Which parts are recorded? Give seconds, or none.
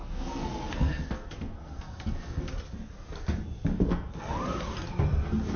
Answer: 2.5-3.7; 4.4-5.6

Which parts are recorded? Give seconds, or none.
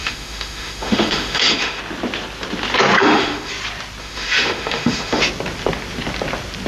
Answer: 1.8-3.0; 3.5-4.0; 5.2-6.7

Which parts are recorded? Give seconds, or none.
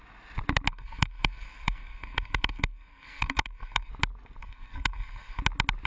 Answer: 0.0-0.7; 3.9-4.4; 5.4-5.9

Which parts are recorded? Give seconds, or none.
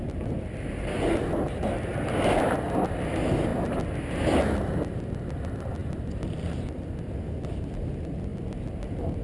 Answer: 0.0-9.2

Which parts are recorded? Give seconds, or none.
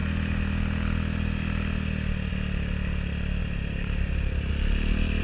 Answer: 0.0-3.4; 4.5-5.2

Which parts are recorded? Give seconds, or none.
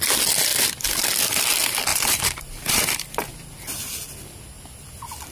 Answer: 0.0-1.9; 2.8-5.3